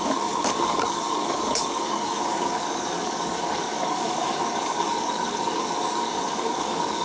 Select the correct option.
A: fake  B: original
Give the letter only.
A